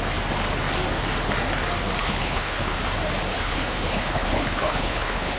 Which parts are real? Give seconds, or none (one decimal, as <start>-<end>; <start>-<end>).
0.0-2.0; 2.8-3.3